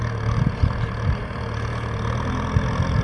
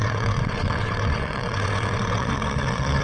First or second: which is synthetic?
second